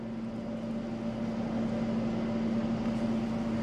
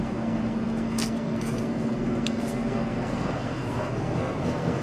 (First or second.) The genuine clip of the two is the first